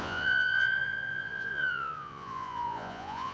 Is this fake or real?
fake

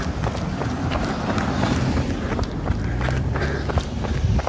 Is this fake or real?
real